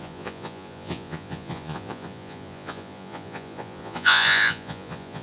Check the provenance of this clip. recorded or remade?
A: remade